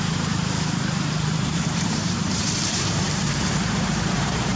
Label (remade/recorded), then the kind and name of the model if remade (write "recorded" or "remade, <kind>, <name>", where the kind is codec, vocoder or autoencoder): remade, vocoder, BigVGAN v2